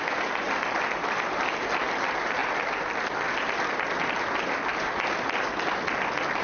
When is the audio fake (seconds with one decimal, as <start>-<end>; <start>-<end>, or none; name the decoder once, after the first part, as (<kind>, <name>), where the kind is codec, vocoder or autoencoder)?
none